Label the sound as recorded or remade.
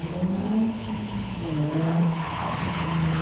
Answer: remade